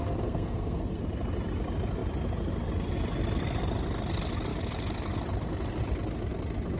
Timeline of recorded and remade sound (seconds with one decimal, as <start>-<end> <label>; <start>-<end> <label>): 0.0-1.0 remade; 1.0-6.8 recorded